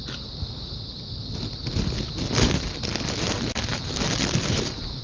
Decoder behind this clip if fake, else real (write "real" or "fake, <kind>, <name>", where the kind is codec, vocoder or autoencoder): real